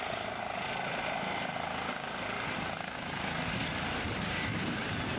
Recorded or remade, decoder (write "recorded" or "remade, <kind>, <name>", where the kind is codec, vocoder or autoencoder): recorded